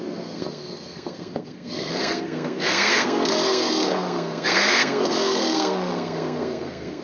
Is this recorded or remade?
remade